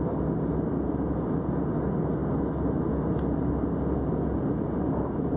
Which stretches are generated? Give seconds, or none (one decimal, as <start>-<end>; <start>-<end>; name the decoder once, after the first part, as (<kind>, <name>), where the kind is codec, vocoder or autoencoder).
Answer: none